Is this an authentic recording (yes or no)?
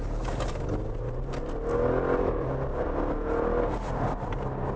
yes